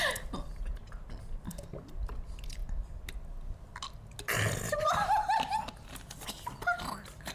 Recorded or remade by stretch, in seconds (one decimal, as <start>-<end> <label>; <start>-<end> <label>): 0.0-7.3 recorded